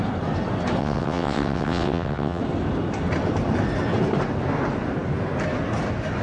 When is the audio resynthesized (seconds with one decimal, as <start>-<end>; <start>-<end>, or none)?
0.8-2.4